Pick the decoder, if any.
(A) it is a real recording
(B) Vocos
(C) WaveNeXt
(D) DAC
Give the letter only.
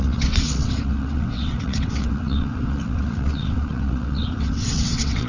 C